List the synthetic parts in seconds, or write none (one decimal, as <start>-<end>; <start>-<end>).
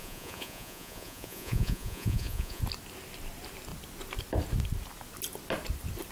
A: 0.0-2.6